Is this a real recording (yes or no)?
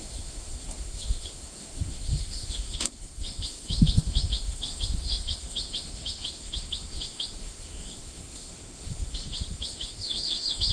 no